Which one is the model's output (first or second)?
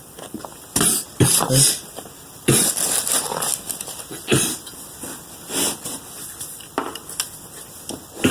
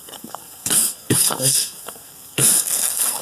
second